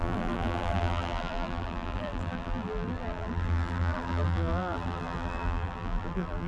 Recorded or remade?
remade